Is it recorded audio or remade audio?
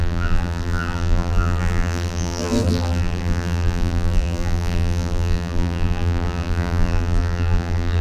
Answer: remade